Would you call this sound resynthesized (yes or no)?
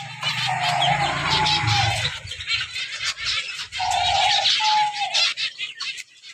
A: no